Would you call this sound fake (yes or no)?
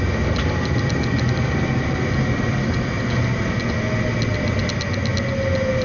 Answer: no